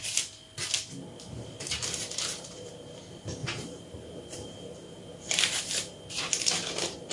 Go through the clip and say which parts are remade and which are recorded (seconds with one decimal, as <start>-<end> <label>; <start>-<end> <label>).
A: 0.0-1.8 recorded; 1.8-3.0 remade; 3.0-3.4 recorded; 3.4-7.1 remade